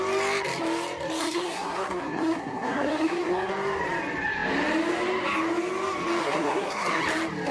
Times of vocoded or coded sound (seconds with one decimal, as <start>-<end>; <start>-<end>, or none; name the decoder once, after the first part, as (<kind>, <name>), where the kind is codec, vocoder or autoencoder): 1.2-3.5 (codec, SNAC); 6.2-7.0